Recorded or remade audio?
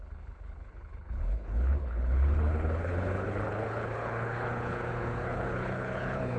remade